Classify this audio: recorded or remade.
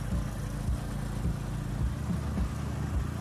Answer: recorded